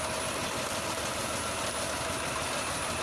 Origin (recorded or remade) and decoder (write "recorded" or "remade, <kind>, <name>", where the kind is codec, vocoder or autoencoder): recorded